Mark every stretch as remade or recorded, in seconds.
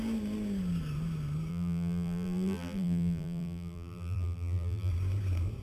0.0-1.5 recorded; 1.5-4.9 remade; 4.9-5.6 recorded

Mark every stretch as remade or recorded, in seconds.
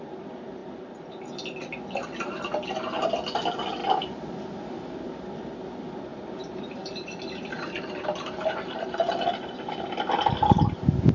0.0-6.1 recorded; 6.1-10.1 remade; 10.1-11.1 recorded